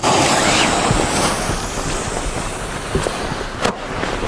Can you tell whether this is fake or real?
real